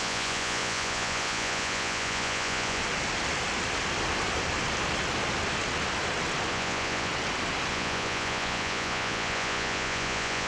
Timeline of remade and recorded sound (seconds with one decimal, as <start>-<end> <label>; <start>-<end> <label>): 0.0-2.8 remade; 2.8-6.5 recorded; 6.5-7.1 remade; 7.1-7.7 recorded; 7.7-10.5 remade